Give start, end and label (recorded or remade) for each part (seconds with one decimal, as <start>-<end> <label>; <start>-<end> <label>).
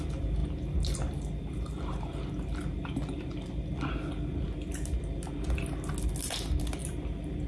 0.0-7.5 recorded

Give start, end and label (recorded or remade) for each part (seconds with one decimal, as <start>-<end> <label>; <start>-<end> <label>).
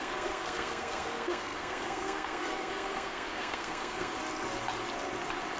0.0-4.1 remade; 4.1-5.6 recorded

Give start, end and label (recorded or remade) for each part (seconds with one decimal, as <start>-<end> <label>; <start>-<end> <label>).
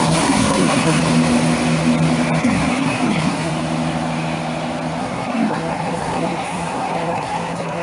0.0-1.0 remade; 1.0-2.4 recorded; 2.4-3.5 remade; 3.5-5.0 recorded; 5.0-7.8 remade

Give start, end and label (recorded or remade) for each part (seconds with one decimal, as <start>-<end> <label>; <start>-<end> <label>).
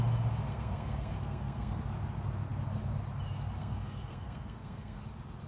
0.0-0.5 recorded; 0.5-1.8 remade; 1.8-3.6 recorded; 3.6-5.0 remade; 5.0-5.5 recorded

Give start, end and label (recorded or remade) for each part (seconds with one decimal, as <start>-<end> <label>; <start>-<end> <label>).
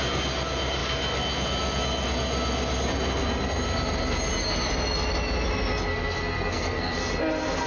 0.0-5.9 recorded; 5.9-7.0 remade; 7.0-7.7 recorded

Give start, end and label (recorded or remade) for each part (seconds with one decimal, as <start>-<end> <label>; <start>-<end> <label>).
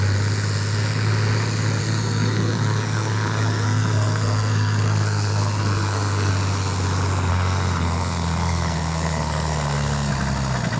0.0-1.8 recorded; 1.8-6.3 remade; 6.3-7.3 recorded; 7.3-10.1 remade; 10.1-10.8 recorded